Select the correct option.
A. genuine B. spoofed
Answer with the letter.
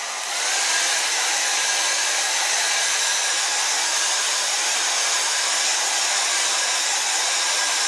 A